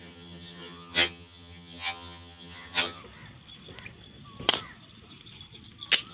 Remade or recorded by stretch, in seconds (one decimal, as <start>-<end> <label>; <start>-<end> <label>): 0.0-3.0 remade; 3.0-6.1 recorded